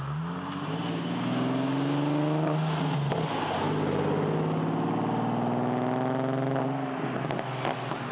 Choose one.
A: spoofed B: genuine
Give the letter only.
B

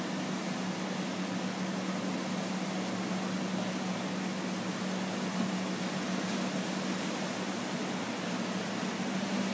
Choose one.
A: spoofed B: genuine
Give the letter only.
B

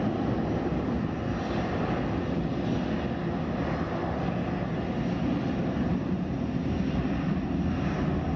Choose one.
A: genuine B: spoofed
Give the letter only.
A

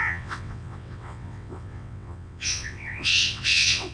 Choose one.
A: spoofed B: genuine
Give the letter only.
A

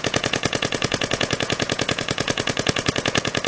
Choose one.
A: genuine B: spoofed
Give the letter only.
B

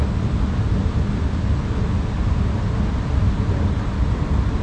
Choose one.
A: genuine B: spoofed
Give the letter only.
A